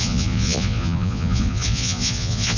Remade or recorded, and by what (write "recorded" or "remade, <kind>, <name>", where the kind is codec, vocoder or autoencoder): remade, vocoder, Vocos